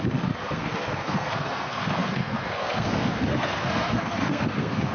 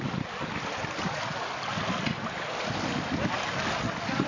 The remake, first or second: first